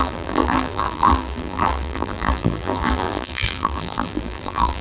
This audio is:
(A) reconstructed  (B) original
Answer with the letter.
A